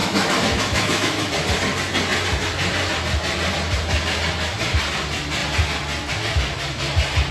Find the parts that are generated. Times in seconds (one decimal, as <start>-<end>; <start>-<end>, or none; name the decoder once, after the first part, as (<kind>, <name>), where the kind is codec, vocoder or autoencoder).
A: 0.0-1.3 (autoencoder, DAC-VAE)